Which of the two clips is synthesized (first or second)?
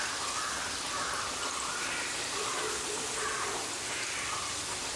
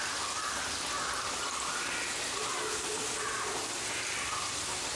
first